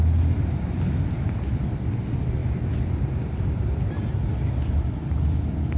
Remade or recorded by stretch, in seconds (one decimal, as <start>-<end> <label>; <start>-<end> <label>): 0.0-5.8 recorded